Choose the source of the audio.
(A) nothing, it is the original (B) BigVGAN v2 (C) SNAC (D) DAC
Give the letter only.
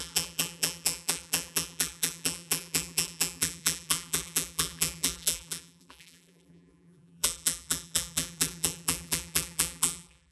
B